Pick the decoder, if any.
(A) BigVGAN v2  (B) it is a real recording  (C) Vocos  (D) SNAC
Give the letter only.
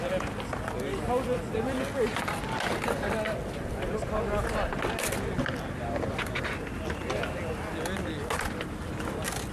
B